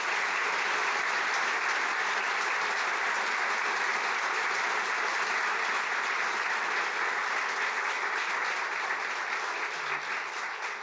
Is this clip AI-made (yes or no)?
no